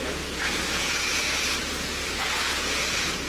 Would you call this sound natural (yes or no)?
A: no